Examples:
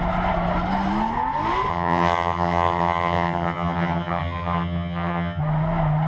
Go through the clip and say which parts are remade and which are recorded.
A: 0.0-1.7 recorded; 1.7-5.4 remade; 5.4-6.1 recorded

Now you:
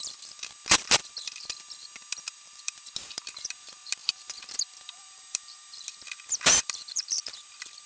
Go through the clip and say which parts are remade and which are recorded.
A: 0.0-1.5 remade; 1.5-2.3 recorded; 2.3-7.9 remade

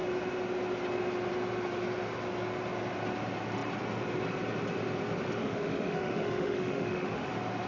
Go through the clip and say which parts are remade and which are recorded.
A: 0.0-5.4 recorded; 5.4-7.3 remade; 7.3-7.7 recorded

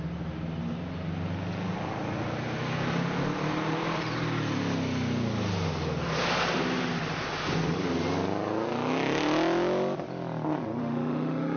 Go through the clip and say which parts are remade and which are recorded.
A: 0.0-10.8 recorded; 10.8-11.6 remade

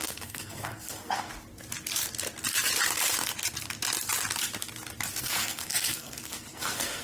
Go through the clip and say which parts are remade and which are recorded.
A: 0.0-1.3 remade; 1.3-5.2 recorded; 5.2-7.0 remade